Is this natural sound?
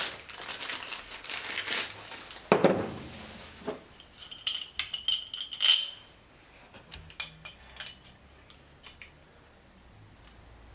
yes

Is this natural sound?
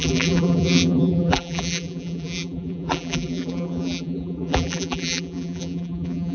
no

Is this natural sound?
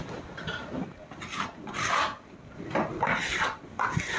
yes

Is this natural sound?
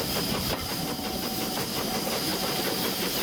no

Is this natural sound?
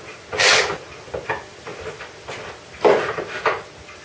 yes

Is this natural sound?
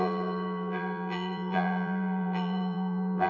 no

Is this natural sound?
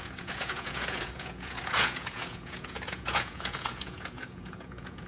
no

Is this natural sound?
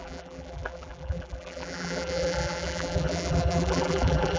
no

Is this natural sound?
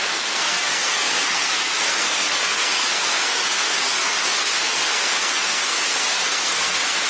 no